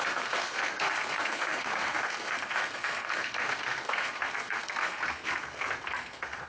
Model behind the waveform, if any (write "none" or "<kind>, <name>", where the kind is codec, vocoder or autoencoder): codec, SNAC